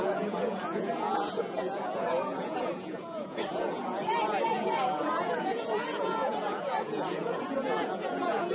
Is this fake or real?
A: fake